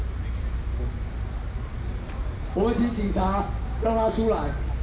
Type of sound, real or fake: real